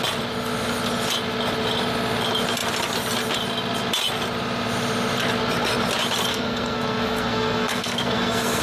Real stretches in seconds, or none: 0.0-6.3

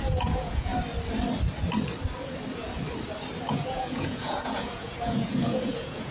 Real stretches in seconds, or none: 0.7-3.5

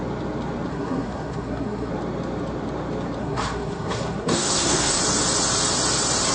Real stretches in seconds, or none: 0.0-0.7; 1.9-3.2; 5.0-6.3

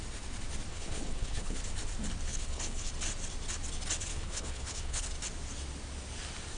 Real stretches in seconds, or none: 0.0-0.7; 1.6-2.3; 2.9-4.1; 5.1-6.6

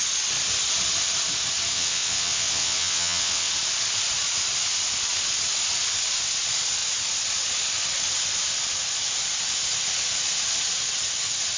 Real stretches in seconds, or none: 0.0-1.7; 3.5-11.6

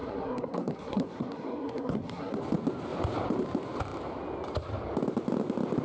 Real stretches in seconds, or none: 2.4-5.8